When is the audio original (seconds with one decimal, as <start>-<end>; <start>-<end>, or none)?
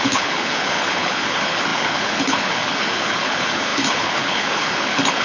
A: none